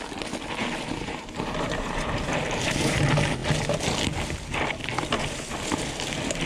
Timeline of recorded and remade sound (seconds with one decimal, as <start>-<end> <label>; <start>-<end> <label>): 0.0-0.6 recorded; 0.6-3.0 remade; 3.0-6.5 recorded